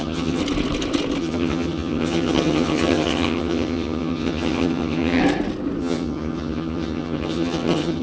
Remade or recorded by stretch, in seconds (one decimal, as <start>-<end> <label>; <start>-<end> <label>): 0.0-0.4 remade; 0.4-1.2 recorded; 1.2-5.2 remade; 5.2-5.8 recorded; 5.8-8.0 remade